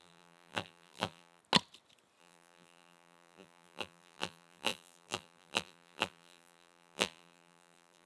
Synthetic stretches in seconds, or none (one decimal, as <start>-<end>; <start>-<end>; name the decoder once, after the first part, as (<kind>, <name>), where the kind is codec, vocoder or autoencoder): 0.0-1.4 (vocoder, BigVGAN v2); 2.2-8.1